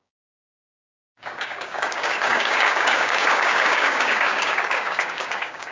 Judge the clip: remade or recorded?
remade